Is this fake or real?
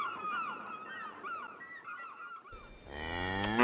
real